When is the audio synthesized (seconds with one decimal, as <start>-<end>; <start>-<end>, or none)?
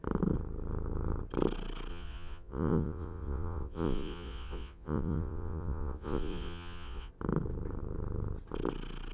1.9-7.1